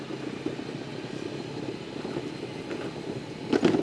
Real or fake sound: real